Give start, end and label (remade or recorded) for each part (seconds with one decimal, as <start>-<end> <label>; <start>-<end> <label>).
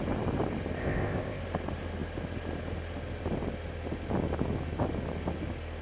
0.0-0.8 recorded; 0.8-1.4 remade; 1.4-5.8 recorded